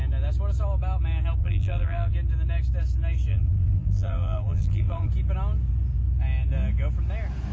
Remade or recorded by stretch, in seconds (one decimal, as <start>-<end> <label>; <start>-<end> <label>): 0.0-1.4 recorded; 1.4-2.1 remade; 2.1-3.3 recorded; 3.3-5.1 remade; 5.1-7.5 recorded